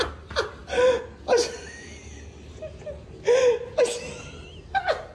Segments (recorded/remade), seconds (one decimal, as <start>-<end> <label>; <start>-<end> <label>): 0.0-5.1 recorded